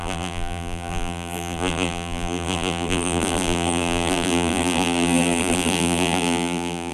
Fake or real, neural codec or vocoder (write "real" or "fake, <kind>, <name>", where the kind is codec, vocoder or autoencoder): fake, vocoder, BigVGAN v2